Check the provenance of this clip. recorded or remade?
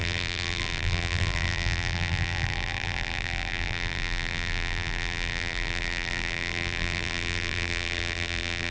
remade